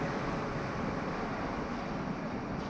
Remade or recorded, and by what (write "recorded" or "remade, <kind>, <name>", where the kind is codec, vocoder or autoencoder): recorded